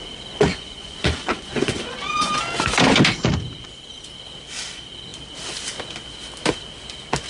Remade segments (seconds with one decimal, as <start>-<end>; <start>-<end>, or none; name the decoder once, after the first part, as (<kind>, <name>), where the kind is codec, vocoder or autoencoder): 0.5-2.4 (vocoder, Vocos)